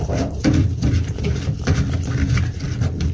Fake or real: fake